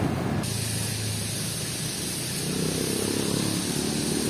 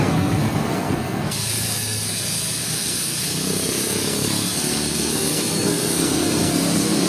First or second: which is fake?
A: second